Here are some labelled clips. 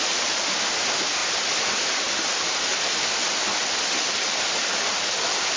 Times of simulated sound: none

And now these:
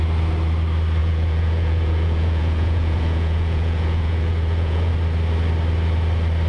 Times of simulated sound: 1.0-4.9 (vocoder, Vocos)

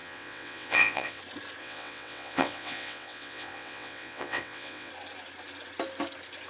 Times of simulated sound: 0.0-1.2 (vocoder, WaveNeXt); 1.6-4.9

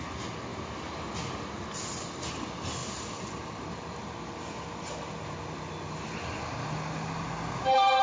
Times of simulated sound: none

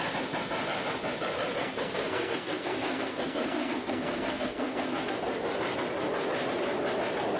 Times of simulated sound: 1.6-5.0 (codec, SNAC)

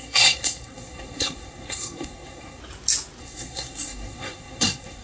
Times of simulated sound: 0.0-2.6 (codec, SNAC); 3.2-5.0

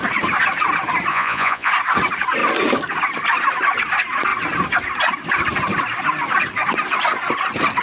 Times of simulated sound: 1.1-1.7 (vocoder, Vocos)